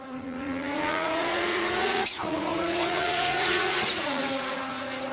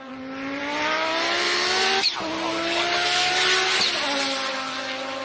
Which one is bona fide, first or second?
second